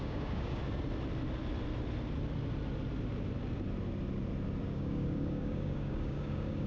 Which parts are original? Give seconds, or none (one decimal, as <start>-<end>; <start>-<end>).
0.6-4.6